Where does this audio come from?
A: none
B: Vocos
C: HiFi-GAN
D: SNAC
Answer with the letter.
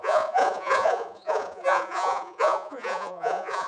B